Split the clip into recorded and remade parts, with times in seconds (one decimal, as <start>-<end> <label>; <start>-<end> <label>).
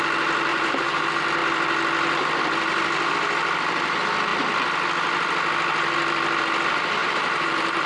0.0-0.5 recorded; 0.5-1.0 remade; 1.0-7.0 recorded; 7.0-7.9 remade